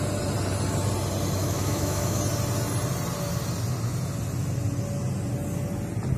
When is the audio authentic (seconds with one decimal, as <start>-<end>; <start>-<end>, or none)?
0.0-1.4; 2.2-6.2